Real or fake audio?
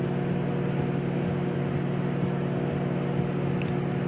real